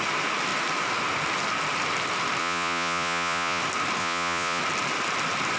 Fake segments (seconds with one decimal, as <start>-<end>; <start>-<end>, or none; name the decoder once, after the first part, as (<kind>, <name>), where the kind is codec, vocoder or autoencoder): 2.4-3.6 (vocoder, Vocos); 4.0-4.6